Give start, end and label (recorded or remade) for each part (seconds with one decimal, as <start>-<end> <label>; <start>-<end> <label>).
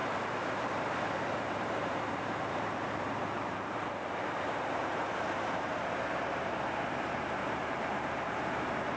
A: 0.0-9.0 remade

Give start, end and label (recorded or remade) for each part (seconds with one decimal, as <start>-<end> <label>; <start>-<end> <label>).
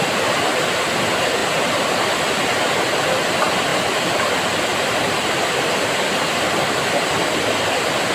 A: 0.0-1.4 recorded; 1.4-2.2 remade; 2.2-3.7 recorded; 3.7-8.1 remade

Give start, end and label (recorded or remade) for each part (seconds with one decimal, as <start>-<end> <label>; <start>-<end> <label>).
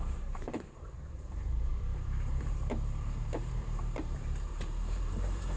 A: 0.0-5.6 remade